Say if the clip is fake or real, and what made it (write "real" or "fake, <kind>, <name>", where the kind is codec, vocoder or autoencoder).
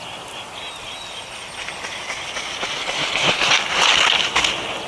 real